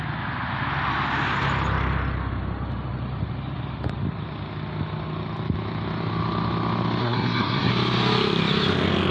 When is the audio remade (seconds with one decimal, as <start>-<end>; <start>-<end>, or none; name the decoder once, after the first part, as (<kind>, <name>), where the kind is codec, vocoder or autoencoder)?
7.0-7.7 (codec, SNAC)